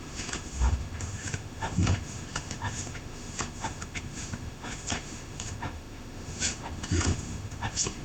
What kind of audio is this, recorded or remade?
remade